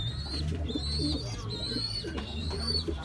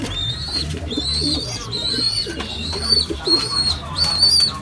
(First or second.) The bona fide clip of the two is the first